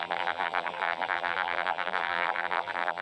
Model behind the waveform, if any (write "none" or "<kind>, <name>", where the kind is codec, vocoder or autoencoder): vocoder, BigVGAN v2